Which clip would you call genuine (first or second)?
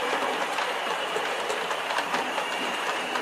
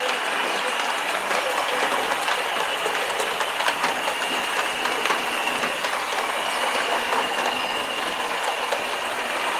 second